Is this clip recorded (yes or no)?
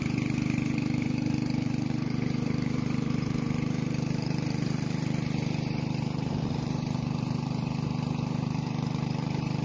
no